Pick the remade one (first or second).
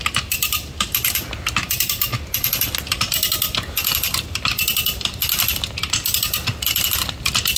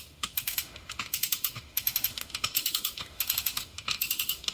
second